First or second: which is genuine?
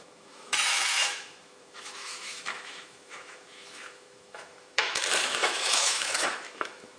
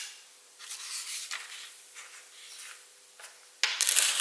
second